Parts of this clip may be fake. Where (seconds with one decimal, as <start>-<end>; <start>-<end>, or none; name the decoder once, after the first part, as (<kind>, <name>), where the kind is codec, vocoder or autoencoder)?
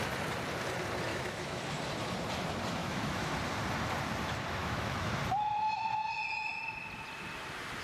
1.1-1.6 (autoencoder, DAC-VAE); 2.8-3.3; 4.6-5.2